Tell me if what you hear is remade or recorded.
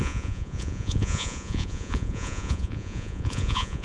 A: remade